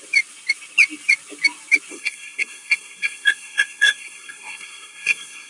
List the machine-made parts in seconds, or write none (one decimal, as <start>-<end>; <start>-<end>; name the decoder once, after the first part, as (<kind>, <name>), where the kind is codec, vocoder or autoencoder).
1.9-5.5 (codec, SNAC)